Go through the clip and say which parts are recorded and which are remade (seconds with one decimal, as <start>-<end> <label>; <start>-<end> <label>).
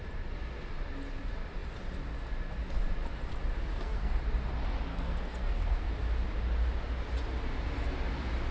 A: 0.0-3.7 recorded; 3.7-4.2 remade; 4.2-4.9 recorded; 4.9-5.9 remade; 5.9-8.5 recorded